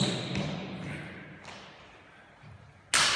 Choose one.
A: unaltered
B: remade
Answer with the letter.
A